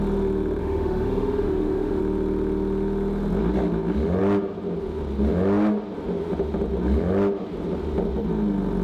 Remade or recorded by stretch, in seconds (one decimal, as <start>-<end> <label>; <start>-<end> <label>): 0.0-0.6 recorded; 0.6-2.0 remade; 2.0-8.8 recorded